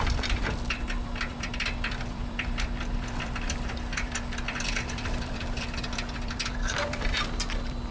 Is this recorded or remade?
remade